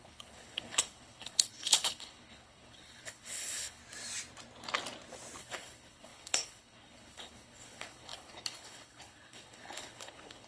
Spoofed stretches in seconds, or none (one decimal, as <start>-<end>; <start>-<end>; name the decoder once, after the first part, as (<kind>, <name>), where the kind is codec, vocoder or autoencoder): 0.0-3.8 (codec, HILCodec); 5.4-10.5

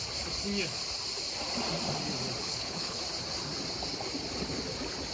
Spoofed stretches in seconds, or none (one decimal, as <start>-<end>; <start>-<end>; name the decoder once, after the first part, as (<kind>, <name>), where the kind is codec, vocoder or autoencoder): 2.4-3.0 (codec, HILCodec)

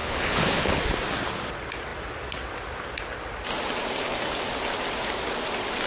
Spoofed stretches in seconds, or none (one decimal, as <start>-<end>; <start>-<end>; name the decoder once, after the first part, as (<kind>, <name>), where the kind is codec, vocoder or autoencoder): 0.0-0.8 (codec, HILCodec)

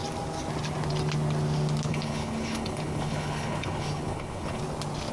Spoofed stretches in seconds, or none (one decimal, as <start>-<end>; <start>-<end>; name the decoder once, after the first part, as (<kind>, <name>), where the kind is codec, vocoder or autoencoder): 1.9-4.6 (codec, HILCodec)